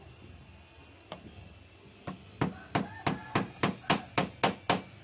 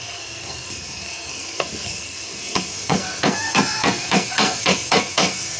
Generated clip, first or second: second